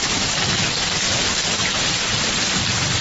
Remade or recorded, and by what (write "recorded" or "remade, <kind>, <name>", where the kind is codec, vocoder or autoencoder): recorded